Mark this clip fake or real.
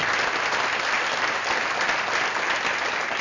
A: real